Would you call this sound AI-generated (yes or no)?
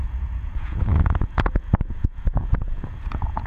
yes